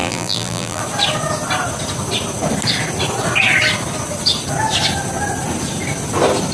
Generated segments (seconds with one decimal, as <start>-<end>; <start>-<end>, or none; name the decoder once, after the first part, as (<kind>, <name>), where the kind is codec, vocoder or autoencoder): 0.0-0.8 (vocoder, BigVGAN v2)